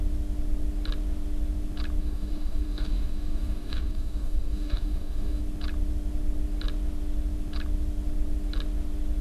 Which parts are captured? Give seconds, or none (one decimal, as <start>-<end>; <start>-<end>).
0.0-2.0; 5.4-9.2